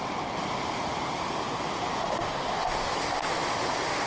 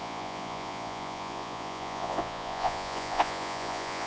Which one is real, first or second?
first